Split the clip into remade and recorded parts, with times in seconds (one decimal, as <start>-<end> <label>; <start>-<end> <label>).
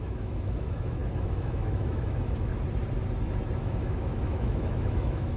0.0-2.5 remade; 2.5-3.6 recorded; 3.6-5.4 remade